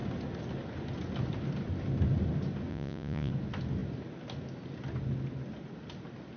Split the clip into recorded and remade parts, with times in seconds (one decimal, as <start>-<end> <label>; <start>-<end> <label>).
0.0-2.7 recorded; 2.7-3.3 remade; 3.3-6.4 recorded